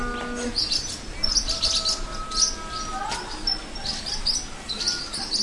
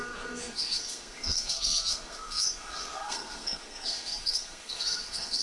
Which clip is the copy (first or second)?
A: second